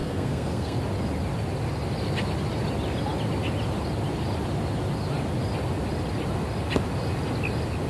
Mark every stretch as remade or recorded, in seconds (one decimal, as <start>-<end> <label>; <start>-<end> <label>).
0.0-0.8 remade; 0.8-7.9 recorded